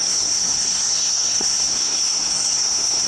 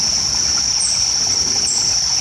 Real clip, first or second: second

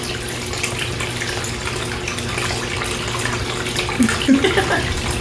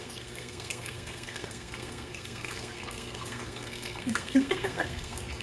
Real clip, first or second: first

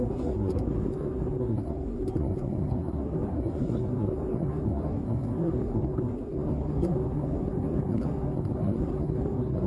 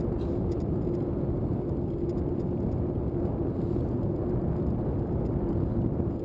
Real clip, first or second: second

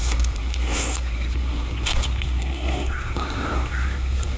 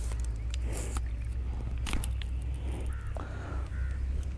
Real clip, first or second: second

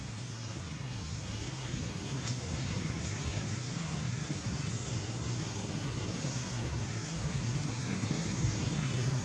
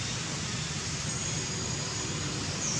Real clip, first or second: second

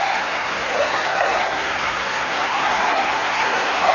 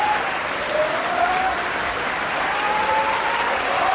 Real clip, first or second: second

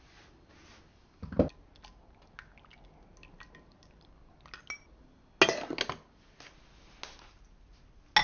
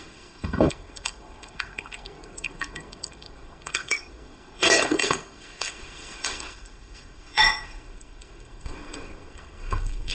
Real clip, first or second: first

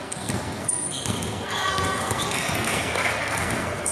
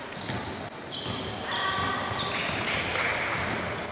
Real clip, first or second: second